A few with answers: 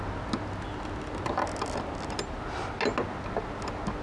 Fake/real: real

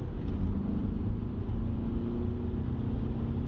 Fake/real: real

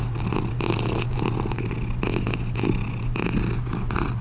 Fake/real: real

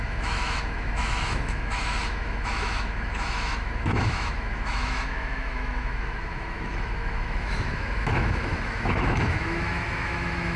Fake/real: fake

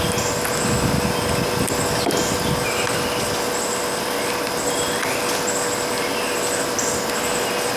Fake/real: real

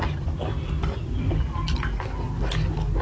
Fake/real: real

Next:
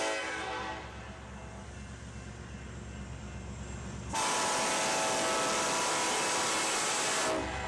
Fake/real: real